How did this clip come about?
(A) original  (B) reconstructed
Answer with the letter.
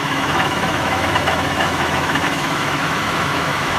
B